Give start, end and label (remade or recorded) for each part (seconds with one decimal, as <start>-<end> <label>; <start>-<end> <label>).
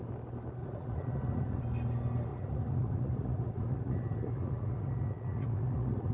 0.0-0.6 recorded; 0.6-1.6 remade; 1.6-2.3 recorded; 2.3-6.1 remade